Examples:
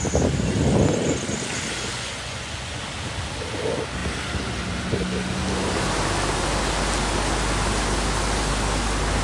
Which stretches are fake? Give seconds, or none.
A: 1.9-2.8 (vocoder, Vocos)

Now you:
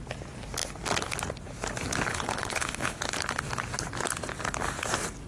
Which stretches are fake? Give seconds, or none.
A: 2.1-3.0 (codec, HILCodec)

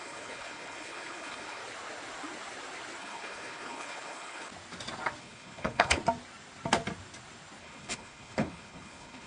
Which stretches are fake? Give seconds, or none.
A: 0.0-1.6 (codec, HILCodec); 3.0-4.5; 5.2-6.0; 7.6-9.3